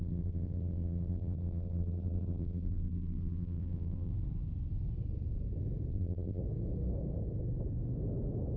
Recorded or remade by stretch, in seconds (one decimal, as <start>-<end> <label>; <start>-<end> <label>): 0.0-4.1 remade; 4.1-5.9 recorded; 5.9-6.4 remade; 6.4-8.6 recorded